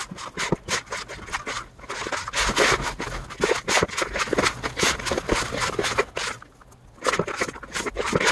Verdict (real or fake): real